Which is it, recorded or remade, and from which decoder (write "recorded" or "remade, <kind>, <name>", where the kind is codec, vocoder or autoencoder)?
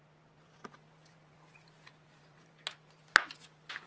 recorded